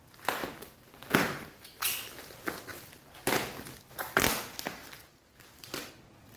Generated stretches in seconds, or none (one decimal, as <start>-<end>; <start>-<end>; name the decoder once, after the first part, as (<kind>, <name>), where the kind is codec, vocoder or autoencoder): none